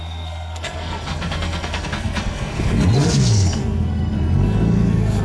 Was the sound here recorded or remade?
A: remade